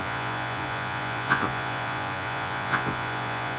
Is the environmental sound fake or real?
fake